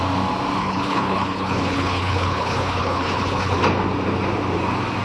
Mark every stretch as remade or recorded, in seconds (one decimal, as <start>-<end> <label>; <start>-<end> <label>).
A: 0.0-0.6 recorded; 0.6-3.6 remade; 3.6-5.0 recorded